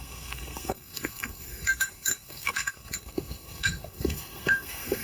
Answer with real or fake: fake